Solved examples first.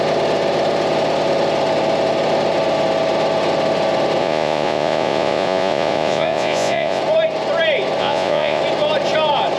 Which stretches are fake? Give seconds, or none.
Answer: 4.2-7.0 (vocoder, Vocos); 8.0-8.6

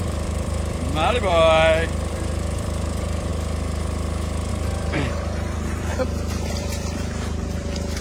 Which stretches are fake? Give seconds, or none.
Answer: 0.0-3.3 (vocoder, BigVGAN v2); 4.5-5.9; 6.5-8.0

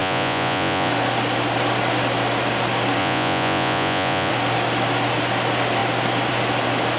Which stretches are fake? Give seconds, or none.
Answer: 0.0-0.9 (vocoder, Vocos); 3.0-4.3

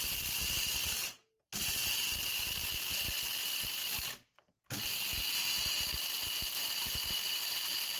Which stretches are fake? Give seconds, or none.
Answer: 0.0-5.1 (vocoder, BigVGAN v2); 5.8-8.0